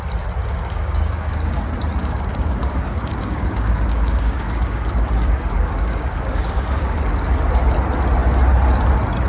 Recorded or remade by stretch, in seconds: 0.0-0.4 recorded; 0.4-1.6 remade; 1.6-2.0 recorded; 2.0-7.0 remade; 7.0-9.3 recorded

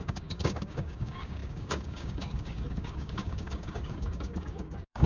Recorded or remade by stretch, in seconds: 0.0-5.1 remade

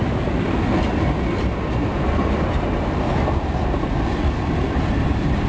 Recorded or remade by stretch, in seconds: 0.0-5.5 recorded

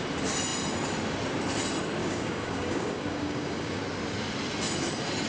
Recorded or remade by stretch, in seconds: 0.0-2.0 recorded; 2.0-3.8 remade; 3.8-5.3 recorded

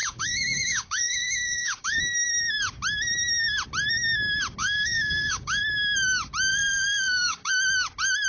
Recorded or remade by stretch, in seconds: 0.0-2.0 remade; 2.0-4.6 recorded; 4.6-5.6 remade; 5.6-6.5 recorded; 6.5-7.5 remade; 7.5-8.3 recorded